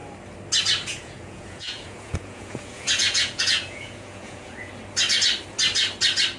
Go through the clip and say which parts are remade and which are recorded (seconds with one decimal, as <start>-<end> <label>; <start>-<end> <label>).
0.0-0.9 recorded; 0.9-4.7 remade; 4.7-6.4 recorded